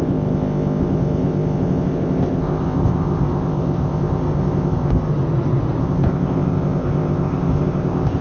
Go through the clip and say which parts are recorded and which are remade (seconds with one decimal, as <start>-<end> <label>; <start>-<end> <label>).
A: 0.0-5.1 remade; 5.1-5.8 recorded; 5.8-8.2 remade